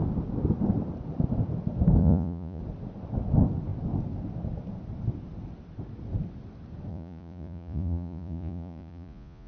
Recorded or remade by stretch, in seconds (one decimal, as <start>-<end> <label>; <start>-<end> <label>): 0.0-2.0 recorded; 2.0-2.6 remade; 2.6-6.9 recorded; 6.9-9.5 remade